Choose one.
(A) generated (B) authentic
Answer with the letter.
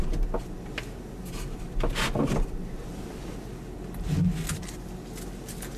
B